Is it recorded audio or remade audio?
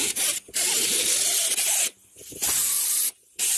recorded